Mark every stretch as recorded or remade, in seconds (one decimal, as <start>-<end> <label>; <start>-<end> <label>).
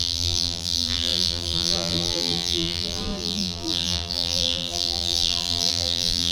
0.0-6.3 remade